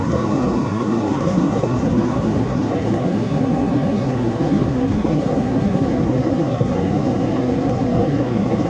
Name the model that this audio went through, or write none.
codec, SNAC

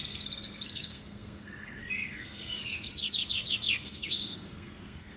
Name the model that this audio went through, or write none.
codec, SNAC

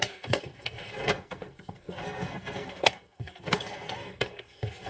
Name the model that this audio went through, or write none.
codec, SNAC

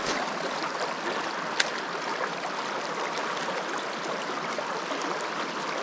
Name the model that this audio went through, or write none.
none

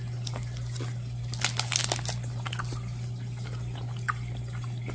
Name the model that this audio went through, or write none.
none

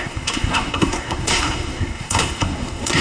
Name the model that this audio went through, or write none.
codec, SNAC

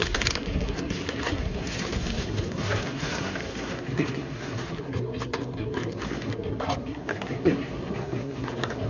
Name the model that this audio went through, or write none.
codec, SNAC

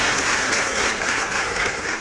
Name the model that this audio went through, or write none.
codec, SNAC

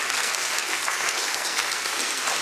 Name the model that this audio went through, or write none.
codec, SNAC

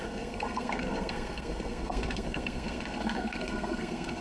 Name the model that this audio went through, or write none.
codec, SNAC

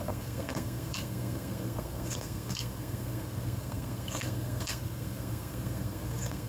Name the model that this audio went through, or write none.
codec, SNAC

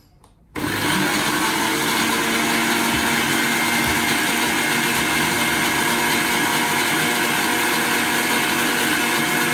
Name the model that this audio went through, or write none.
none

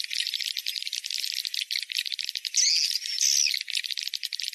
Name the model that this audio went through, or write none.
none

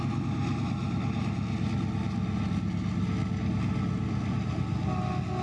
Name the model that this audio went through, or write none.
none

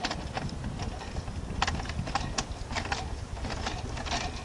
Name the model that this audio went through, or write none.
none